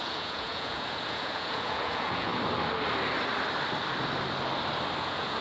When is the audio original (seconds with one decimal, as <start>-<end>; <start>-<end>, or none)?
2.3-5.0